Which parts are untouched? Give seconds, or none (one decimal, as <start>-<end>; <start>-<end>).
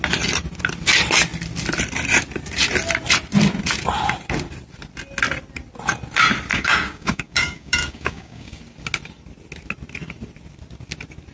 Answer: 0.0-6.5; 8.6-11.3